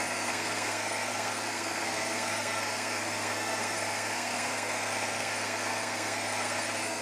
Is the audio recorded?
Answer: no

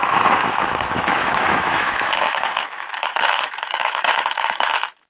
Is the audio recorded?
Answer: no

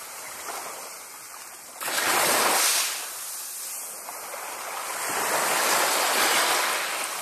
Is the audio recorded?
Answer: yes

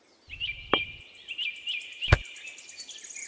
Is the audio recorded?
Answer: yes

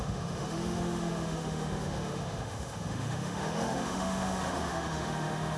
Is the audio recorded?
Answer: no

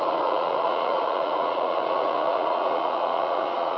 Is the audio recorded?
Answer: no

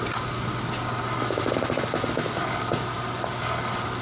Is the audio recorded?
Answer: yes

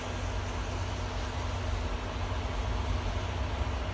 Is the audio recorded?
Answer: yes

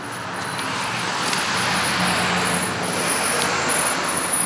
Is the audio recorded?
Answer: yes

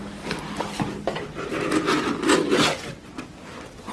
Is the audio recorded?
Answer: yes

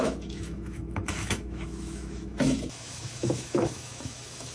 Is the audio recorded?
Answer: no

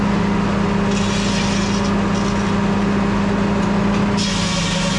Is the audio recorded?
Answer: yes